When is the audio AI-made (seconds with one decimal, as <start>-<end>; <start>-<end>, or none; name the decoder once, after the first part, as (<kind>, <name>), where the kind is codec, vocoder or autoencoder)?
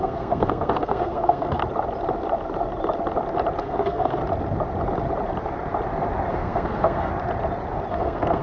0.0-1.6 (codec, SNAC); 3.6-4.2; 6.3-7.1; 7.9-8.4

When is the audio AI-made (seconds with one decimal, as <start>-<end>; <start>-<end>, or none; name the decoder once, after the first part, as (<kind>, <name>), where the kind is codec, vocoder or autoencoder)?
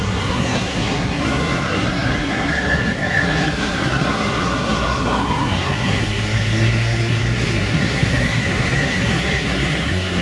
0.0-10.2 (codec, SNAC)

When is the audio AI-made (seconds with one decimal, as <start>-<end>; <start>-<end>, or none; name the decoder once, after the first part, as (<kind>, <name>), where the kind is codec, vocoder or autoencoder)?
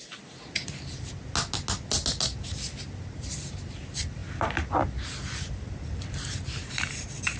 none